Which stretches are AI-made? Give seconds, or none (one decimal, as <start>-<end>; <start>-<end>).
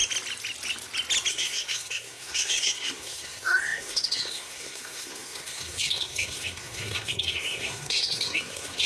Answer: 1.3-8.9